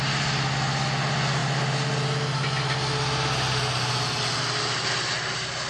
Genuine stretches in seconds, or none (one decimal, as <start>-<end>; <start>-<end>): 0.0-5.7